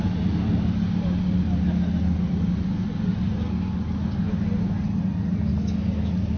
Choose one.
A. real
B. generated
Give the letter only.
A